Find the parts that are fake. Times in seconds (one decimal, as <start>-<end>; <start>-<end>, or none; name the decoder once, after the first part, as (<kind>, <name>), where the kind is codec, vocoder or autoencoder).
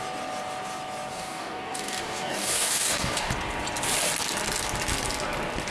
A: 1.1-3.3 (codec, DAC)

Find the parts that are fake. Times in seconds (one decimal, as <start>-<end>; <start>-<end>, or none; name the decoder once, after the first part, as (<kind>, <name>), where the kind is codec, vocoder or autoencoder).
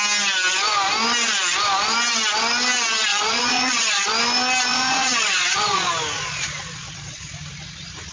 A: 3.1-4.1 (vocoder, Vocos); 4.7-5.9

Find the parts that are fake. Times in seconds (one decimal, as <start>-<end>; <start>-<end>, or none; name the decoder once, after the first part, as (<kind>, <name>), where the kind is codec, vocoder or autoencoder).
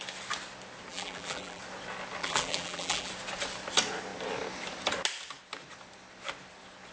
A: 0.9-1.6 (vocoder, BigVGAN v2); 2.2-3.1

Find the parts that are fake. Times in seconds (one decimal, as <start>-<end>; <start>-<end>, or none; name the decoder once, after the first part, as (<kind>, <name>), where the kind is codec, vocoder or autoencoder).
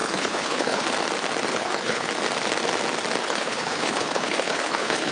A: 0.0-0.9 (codec, HILCodec); 1.5-2.1; 3.2-5.1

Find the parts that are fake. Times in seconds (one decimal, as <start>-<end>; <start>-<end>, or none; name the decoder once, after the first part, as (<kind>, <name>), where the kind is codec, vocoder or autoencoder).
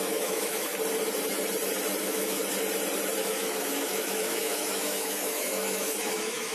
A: 0.0-0.7 (autoencoder, DAC-VAE); 2.0-2.4; 3.2-6.5